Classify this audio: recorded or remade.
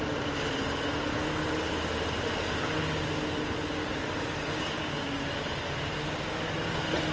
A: recorded